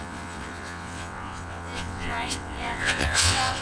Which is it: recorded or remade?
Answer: remade